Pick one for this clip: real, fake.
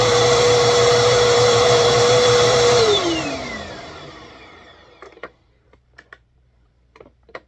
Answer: fake